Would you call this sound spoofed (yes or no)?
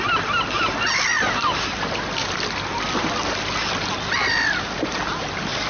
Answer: no